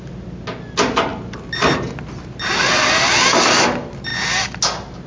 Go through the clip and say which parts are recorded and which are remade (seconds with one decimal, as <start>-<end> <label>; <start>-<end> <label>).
0.0-5.1 recorded